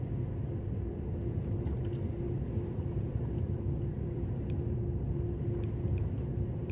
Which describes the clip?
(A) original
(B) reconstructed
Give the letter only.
A